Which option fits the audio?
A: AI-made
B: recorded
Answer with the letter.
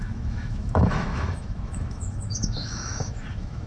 A